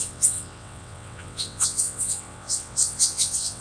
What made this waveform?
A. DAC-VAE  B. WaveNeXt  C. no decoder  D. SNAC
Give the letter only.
B